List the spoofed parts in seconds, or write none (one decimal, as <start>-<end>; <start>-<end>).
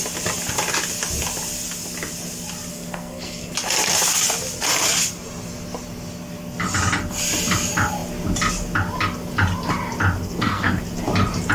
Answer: 2.7-3.5; 10.2-10.8